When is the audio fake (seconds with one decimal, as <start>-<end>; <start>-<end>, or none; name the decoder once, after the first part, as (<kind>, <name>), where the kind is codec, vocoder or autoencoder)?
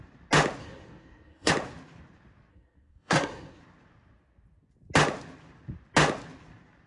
0.6-1.5 (codec, SNAC); 2.5-3.6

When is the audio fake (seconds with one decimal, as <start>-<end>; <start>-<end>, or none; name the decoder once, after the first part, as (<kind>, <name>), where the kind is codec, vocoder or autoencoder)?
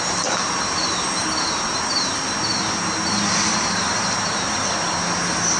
none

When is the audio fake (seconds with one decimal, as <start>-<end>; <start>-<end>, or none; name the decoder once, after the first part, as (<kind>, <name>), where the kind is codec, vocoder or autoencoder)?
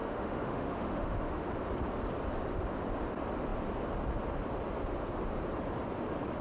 0.0-1.5 (autoencoder, DAC-VAE)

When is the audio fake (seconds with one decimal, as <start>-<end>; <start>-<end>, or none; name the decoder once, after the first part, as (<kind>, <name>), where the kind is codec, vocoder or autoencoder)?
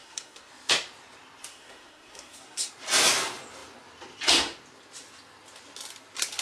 0.0-0.5 (codec, SNAC); 1.5-2.7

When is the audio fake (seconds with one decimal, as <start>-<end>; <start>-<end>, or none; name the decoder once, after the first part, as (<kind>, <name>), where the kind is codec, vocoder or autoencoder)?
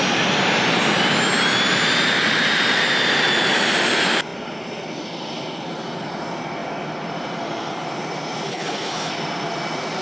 8.5-9.1 (codec, HILCodec)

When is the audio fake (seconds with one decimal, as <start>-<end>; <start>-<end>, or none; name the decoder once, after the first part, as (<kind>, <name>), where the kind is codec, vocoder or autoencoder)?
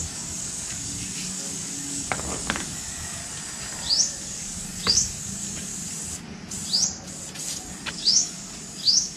0.0-3.2 (codec, DAC); 4.2-5.7; 7.9-9.2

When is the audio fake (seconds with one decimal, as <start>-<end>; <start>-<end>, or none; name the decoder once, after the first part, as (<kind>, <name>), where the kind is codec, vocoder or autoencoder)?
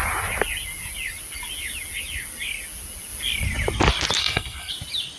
4.2-4.7 (codec, SNAC)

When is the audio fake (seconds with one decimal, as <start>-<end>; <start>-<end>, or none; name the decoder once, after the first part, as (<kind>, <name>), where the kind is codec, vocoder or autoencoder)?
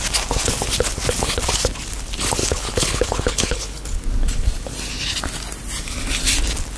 2.4-4.0 (codec, HILCodec)